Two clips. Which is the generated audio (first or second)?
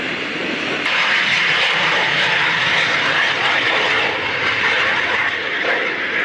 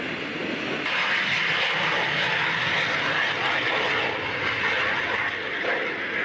first